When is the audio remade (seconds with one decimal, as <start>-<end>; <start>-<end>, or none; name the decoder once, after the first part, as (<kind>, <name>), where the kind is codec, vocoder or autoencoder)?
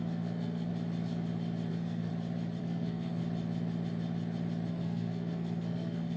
0.0-0.7 (codec, SNAC); 1.7-2.1; 2.6-3.2; 4.7-6.2